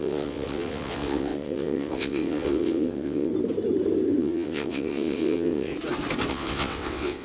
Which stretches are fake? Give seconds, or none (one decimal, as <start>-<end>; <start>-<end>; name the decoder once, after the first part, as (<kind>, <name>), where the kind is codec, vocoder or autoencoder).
0.0-3.3 (vocoder, WaveNeXt); 4.2-5.7; 6.3-7.2